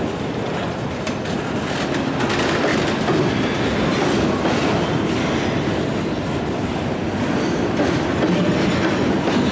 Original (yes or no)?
yes